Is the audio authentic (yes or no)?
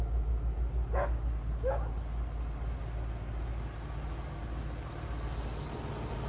yes